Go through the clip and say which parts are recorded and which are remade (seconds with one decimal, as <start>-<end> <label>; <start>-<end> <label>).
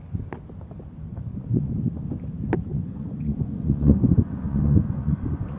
0.0-1.1 recorded; 1.1-1.7 remade; 1.7-2.7 recorded; 2.7-5.6 remade